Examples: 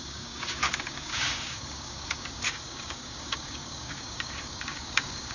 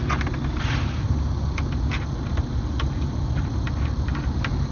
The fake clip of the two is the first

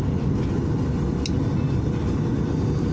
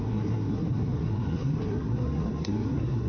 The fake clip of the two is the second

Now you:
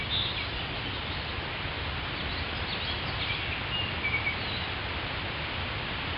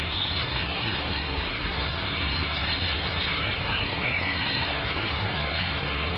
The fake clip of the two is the second